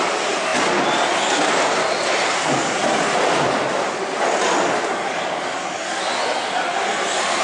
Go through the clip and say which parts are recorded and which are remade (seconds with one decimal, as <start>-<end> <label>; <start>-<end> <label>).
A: 0.0-7.4 recorded